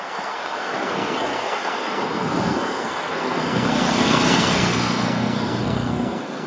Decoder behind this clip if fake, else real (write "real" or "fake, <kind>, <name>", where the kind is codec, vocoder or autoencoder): fake, codec, SNAC